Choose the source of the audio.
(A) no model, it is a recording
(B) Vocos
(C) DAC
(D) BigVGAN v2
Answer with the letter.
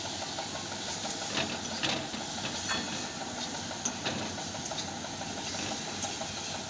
A